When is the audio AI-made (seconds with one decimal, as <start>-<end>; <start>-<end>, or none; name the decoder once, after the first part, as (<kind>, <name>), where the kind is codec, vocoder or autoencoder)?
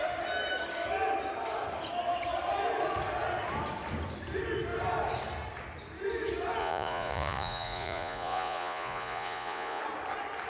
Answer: 6.6-9.8 (vocoder, Vocos)